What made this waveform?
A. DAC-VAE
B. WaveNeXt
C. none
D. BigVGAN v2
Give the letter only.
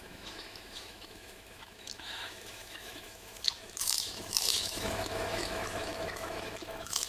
A